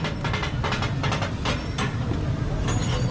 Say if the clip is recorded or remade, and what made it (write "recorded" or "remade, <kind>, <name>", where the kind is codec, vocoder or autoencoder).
recorded